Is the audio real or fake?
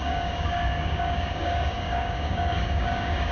fake